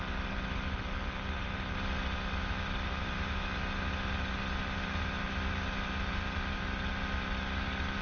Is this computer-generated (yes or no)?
no